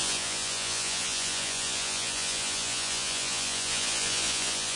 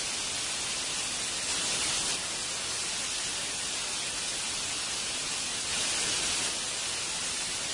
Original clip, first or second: second